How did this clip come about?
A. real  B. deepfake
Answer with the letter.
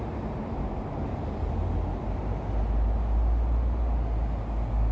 A